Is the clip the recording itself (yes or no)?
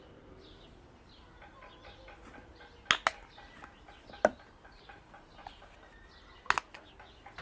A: yes